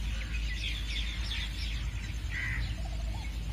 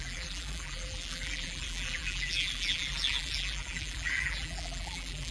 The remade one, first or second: second